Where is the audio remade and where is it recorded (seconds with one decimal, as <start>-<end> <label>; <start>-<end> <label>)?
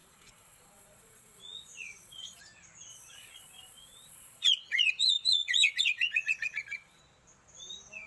0.0-2.4 remade; 2.4-2.9 recorded; 2.9-7.0 remade; 7.0-8.1 recorded